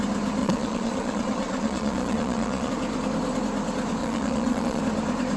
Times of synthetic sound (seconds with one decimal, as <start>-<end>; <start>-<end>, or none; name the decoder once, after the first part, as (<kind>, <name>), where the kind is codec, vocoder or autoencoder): 0.4-2.7 (vocoder, Vocos); 4.0-4.8